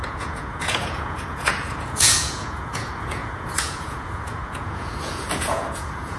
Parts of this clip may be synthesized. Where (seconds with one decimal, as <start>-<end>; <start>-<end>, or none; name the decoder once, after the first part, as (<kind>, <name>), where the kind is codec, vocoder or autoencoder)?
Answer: 0.0-6.2 (vocoder, Vocos)